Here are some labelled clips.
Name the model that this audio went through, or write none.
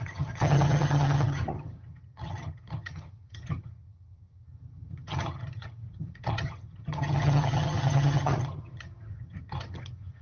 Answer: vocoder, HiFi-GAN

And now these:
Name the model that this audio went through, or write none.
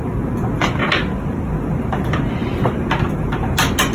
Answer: none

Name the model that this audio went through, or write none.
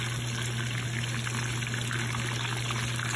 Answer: none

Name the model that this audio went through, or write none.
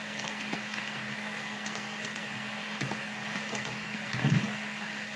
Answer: codec, SNAC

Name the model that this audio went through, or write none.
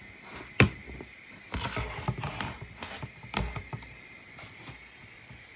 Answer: none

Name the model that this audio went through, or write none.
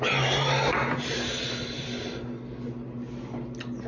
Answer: none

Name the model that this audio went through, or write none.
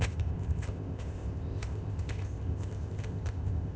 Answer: codec, ZipCodec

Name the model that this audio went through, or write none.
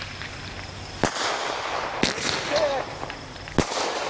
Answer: none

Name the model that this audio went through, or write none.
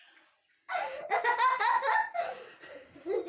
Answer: none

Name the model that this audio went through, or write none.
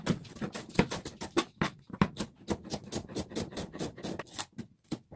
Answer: none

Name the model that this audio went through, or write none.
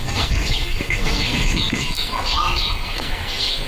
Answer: codec, SNAC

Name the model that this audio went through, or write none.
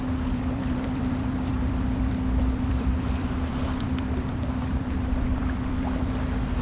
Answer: vocoder, BigVGAN v2